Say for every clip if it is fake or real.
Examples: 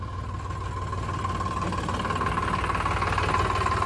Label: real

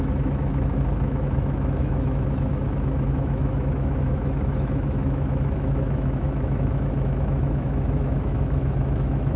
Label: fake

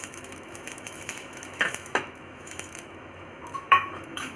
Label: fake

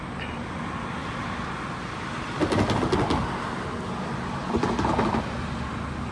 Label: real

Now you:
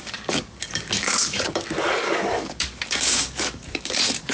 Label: fake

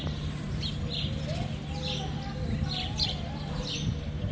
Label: real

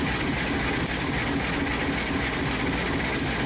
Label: real